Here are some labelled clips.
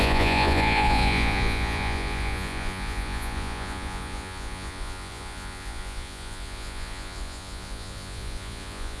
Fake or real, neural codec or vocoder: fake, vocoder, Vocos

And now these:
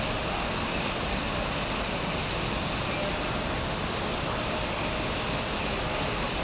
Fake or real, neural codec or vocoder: real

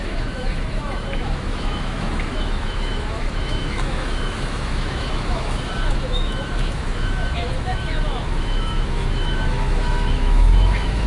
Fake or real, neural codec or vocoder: fake, autoencoder, DAC-VAE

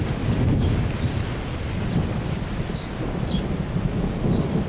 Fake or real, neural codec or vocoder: real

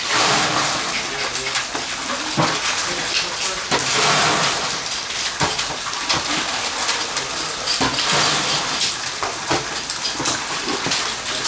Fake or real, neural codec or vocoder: real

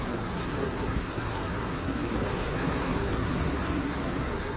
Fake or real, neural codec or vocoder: fake, codec, SNAC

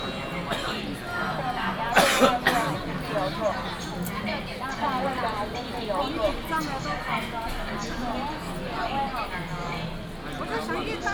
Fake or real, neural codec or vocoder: real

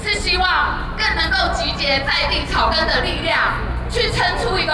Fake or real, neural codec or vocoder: real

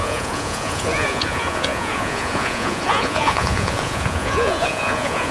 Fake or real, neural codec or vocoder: fake, vocoder, Vocos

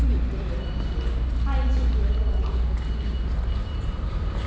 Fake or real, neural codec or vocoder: real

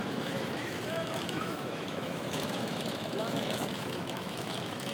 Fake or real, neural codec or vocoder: fake, autoencoder, DAC-VAE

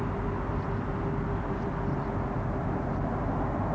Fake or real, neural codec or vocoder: real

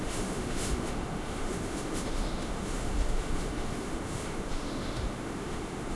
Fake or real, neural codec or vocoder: fake, autoencoder, DAC-VAE